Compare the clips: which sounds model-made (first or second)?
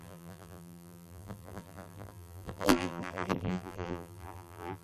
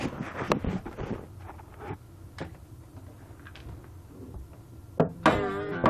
first